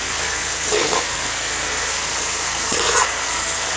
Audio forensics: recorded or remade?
remade